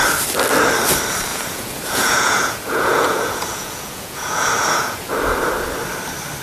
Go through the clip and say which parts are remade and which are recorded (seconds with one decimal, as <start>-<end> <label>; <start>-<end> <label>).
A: 0.0-1.3 recorded; 1.3-5.1 remade; 5.1-6.4 recorded

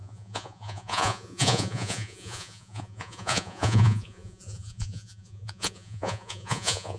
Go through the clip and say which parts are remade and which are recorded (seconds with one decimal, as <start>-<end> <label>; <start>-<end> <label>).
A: 0.0-7.0 remade

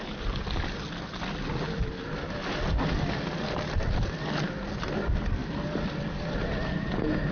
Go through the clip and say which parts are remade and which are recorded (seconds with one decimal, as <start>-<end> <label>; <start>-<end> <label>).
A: 0.0-7.3 recorded

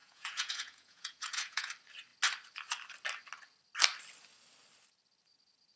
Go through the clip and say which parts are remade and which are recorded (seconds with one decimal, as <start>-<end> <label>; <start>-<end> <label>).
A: 0.0-1.7 remade; 1.7-5.8 recorded

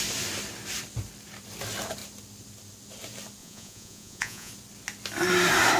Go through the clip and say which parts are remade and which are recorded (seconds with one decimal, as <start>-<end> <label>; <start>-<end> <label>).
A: 0.0-3.4 recorded; 3.4-4.5 remade; 4.5-5.8 recorded

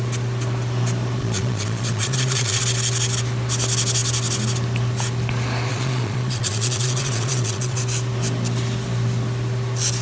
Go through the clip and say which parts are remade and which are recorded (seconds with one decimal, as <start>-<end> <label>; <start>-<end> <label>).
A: 0.0-1.2 recorded; 1.2-2.6 remade; 2.6-5.7 recorded; 5.7-7.8 remade; 7.8-10.0 recorded